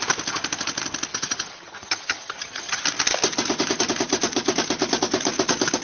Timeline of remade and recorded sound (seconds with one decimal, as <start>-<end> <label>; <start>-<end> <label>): 0.0-1.1 recorded; 1.1-2.8 remade; 2.8-5.8 recorded